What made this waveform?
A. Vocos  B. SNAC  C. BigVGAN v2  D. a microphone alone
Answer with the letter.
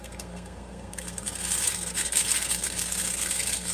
B